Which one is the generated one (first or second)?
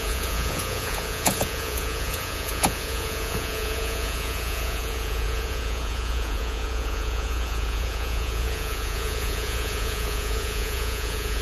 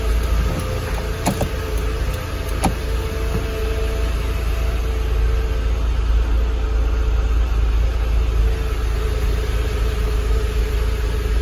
first